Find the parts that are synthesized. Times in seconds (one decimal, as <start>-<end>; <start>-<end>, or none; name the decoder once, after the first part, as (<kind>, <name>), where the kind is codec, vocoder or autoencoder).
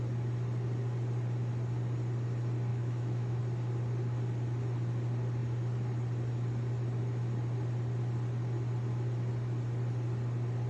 2.7-3.4 (autoencoder, DAC-VAE)